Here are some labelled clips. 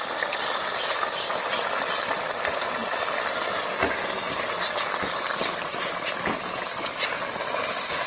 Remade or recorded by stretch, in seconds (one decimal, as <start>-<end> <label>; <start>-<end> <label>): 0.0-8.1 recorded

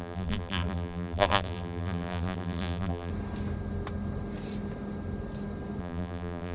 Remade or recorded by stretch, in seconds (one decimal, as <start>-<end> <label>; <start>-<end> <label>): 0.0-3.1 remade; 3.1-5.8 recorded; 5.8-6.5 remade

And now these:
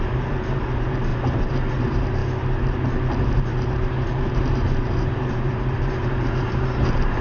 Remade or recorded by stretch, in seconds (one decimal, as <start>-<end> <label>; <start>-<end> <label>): 0.0-2.2 remade; 2.2-3.3 recorded; 3.3-7.2 remade